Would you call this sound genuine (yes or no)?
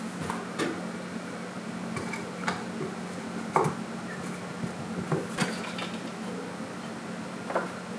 yes